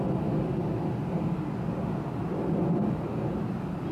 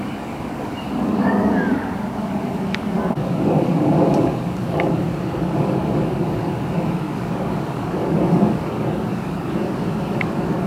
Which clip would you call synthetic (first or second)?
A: second